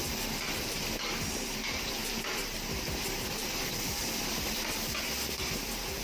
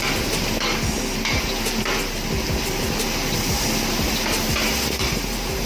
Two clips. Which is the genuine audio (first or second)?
second